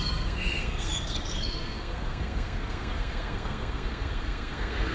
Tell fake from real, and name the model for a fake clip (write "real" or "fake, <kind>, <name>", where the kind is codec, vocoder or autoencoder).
fake, codec, SNAC